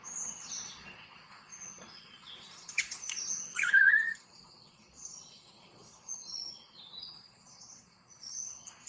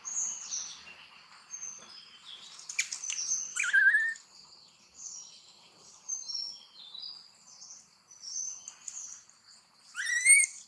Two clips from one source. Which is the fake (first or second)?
first